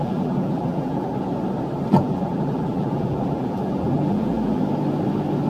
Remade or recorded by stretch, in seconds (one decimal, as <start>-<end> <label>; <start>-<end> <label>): 0.0-1.1 remade; 1.1-1.9 recorded; 1.9-4.6 remade; 4.6-5.5 recorded